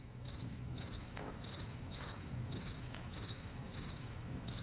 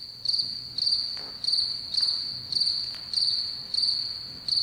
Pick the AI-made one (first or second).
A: first